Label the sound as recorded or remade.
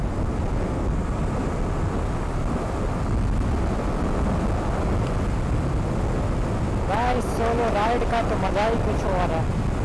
recorded